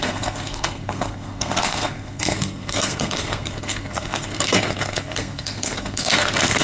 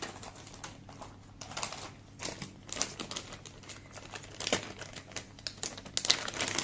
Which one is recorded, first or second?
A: second